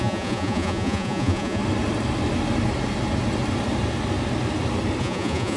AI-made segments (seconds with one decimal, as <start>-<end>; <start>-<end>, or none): 0.0-1.6; 5.0-5.6

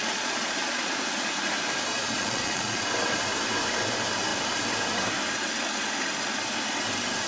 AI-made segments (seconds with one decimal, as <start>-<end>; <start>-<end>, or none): 0.0-1.5; 1.9-2.8

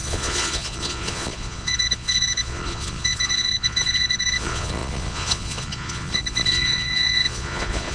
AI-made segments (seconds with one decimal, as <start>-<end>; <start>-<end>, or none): 0.0-7.9

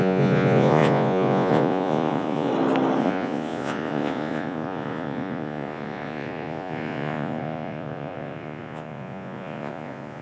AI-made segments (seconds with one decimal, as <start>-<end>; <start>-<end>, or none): 0.0-2.5; 3.0-10.2

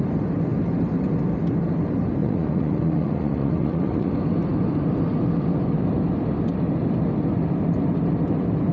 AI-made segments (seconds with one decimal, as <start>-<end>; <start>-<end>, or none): 2.2-4.1

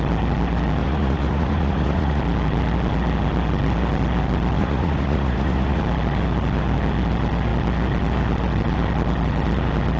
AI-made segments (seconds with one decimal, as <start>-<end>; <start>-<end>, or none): 0.8-2.2; 4.6-5.8

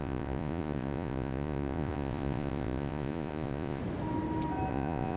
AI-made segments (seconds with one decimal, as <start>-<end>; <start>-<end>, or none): 0.0-3.8; 4.7-5.2

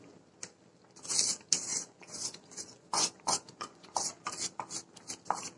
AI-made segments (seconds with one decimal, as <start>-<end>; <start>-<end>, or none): 1.7-4.2